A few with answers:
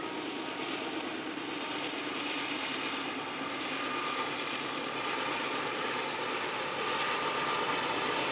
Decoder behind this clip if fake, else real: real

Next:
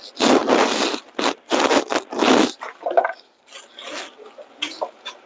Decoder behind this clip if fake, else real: real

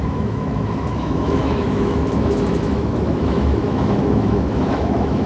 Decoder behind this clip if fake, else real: fake, autoencoder, DAC-VAE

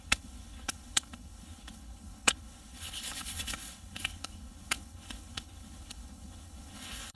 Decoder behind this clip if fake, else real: fake, codec, HILCodec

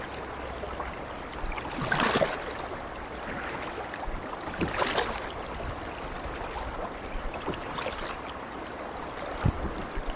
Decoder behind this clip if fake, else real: real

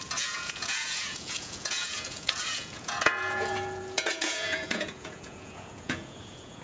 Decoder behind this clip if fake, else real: fake, vocoder, Vocos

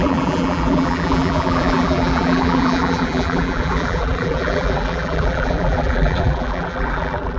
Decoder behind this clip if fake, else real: fake, vocoder, BigVGAN v2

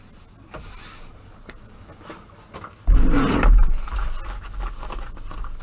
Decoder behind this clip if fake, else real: real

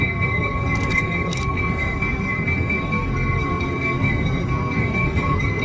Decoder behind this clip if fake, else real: fake, codec, SNAC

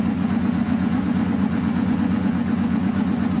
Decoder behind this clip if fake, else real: fake, vocoder, Vocos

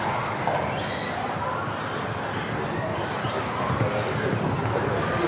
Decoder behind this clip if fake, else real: real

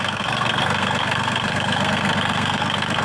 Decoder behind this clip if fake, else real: fake, codec, SNAC